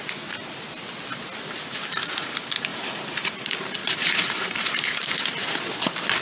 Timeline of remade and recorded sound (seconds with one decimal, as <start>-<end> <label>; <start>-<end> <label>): 0.0-2.7 recorded; 2.7-3.3 remade; 3.3-3.8 recorded; 3.8-5.1 remade; 5.1-6.2 recorded